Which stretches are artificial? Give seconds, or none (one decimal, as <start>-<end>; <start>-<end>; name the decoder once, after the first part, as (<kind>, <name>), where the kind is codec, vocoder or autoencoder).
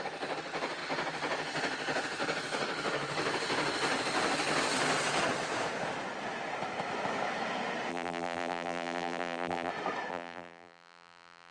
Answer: 7.9-9.7 (vocoder, BigVGAN v2); 10.1-11.5